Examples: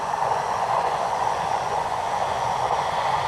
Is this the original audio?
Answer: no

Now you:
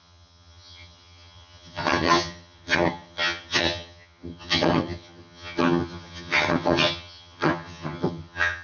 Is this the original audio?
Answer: no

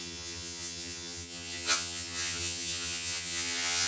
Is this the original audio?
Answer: no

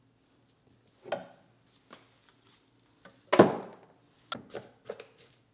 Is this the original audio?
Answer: yes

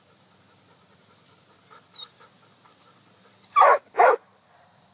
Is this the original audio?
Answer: no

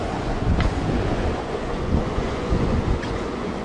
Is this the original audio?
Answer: no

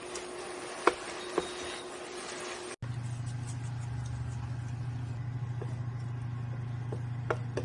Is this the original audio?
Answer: yes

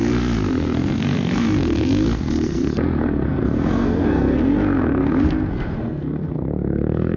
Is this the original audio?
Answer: no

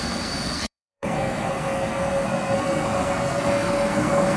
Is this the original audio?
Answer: no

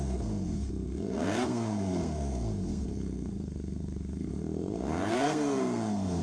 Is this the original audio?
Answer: no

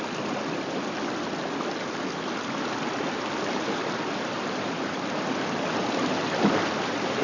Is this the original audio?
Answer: yes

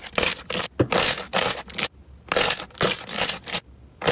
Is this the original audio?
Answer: yes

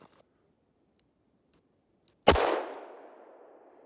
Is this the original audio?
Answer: yes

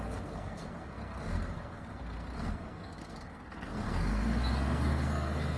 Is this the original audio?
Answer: no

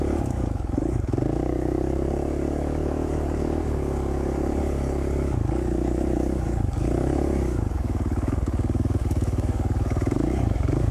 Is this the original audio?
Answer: no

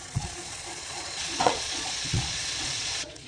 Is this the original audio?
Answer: no